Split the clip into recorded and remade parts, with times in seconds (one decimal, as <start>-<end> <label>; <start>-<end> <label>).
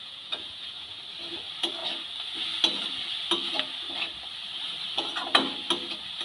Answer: 0.0-1.0 remade; 1.0-6.2 recorded